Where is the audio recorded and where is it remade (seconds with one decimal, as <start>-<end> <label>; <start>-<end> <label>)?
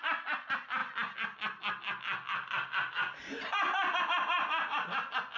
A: 0.0-5.4 recorded